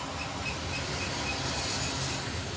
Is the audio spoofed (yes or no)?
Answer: no